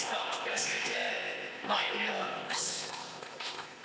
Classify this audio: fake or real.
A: fake